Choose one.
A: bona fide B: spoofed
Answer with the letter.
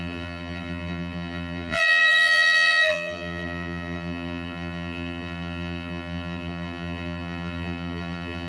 B